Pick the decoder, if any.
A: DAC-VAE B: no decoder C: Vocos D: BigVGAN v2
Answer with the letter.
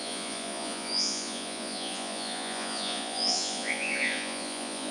C